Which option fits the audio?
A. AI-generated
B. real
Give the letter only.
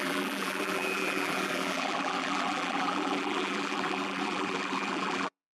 A